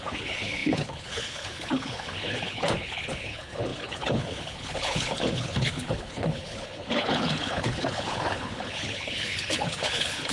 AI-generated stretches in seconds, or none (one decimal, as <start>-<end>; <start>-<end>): 0.0-10.3